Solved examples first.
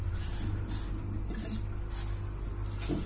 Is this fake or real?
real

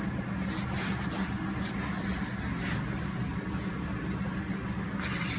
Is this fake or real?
real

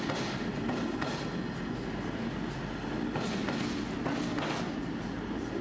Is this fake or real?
real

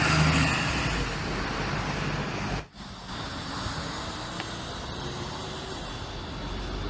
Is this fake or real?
real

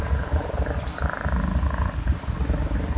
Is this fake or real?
real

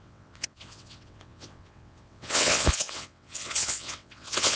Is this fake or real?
fake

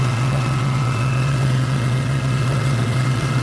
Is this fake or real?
fake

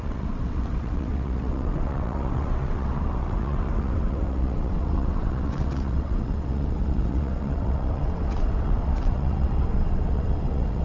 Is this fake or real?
fake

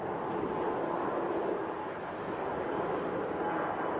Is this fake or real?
real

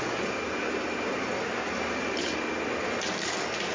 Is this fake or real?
real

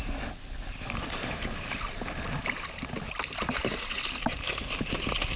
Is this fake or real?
real